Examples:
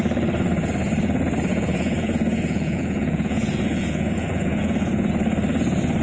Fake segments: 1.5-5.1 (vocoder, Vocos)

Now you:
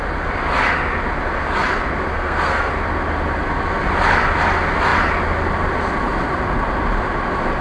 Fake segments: 2.1-2.7 (codec, SNAC)

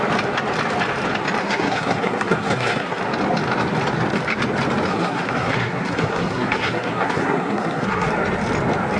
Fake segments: 1.4-3.0 (codec, SNAC); 4.9-8.1

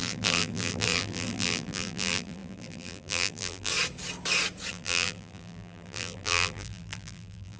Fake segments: 0.0-3.7 (vocoder, BigVGAN v2); 4.7-7.6

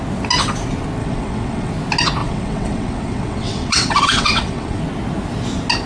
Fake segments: 1.0-1.7 (vocoder, WaveNeXt); 2.2-4.8